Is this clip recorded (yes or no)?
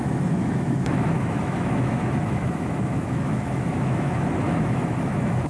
no